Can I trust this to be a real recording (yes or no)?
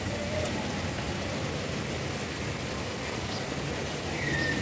yes